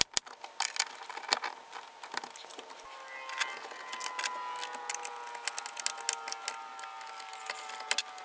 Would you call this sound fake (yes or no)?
no